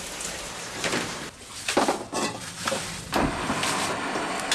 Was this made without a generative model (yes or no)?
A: yes